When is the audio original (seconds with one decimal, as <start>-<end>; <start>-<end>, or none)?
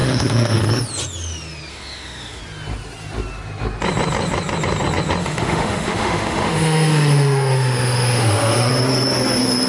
0.6-1.7; 2.4-5.2; 8.7-9.7